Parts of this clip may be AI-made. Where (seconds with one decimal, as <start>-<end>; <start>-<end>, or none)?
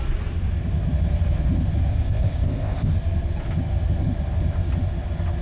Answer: 1.9-2.9